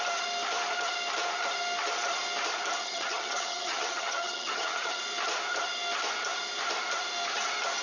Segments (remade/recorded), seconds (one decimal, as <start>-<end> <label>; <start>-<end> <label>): 0.0-2.8 recorded; 2.8-5.0 remade; 5.0-7.8 recorded